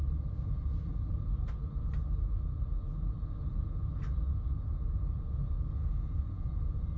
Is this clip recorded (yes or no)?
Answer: yes